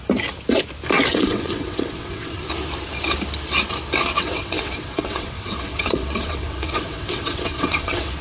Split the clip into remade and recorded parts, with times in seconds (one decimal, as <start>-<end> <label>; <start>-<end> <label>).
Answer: 0.0-1.1 recorded; 1.1-2.4 remade; 2.4-4.0 recorded; 4.0-8.2 remade